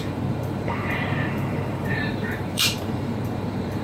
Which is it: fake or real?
fake